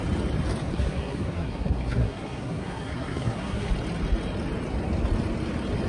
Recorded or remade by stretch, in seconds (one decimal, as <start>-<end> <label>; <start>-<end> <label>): 0.0-0.7 recorded; 0.7-3.7 remade; 3.7-5.9 recorded